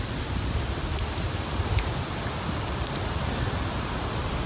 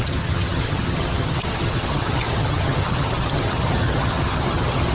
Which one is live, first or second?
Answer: first